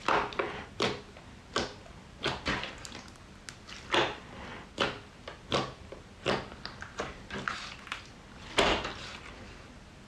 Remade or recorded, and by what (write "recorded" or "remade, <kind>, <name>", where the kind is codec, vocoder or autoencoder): recorded